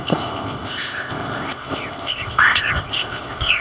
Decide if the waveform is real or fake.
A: fake